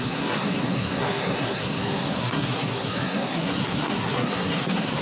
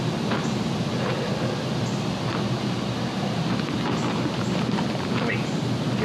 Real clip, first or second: second